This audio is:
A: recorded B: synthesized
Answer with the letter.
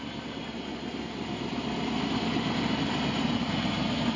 A